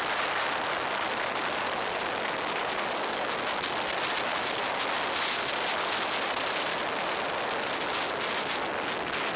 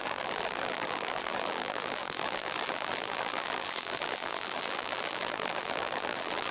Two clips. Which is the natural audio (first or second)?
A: first